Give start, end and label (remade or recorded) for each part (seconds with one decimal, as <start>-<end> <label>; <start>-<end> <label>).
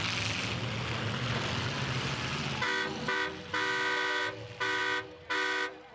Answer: 0.0-5.9 recorded